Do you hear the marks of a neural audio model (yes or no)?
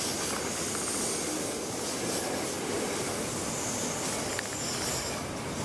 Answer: no